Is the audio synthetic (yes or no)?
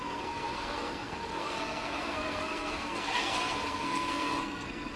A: yes